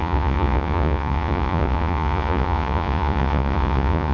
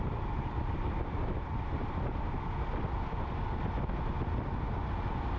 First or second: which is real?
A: second